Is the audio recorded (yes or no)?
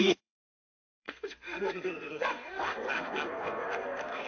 no